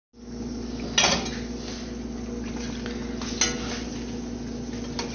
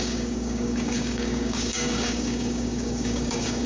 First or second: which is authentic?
first